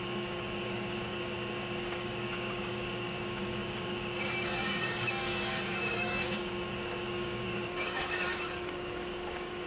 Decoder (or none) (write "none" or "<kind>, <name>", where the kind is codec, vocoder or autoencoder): codec, DAC